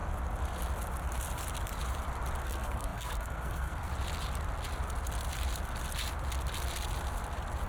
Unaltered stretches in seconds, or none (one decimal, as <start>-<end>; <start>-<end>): 0.0-2.4; 3.9-7.7